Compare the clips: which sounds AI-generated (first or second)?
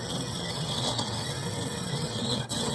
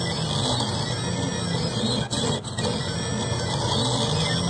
first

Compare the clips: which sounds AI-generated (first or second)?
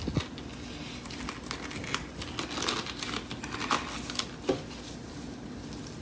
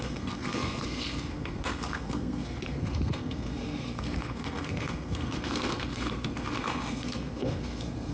second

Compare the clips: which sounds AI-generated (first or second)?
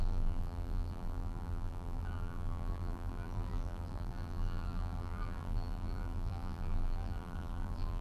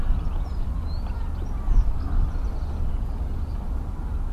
first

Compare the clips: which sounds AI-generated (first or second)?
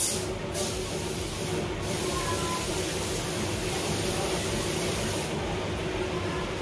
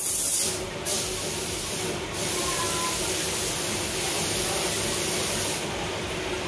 second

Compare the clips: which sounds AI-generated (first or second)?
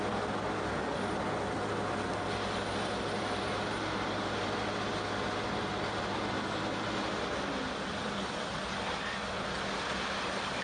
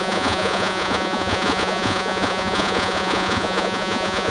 second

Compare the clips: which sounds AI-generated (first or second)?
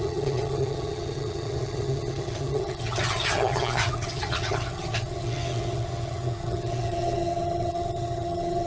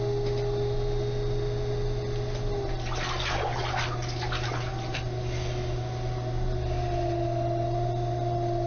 first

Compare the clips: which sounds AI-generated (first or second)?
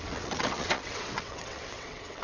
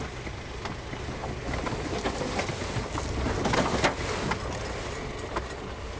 first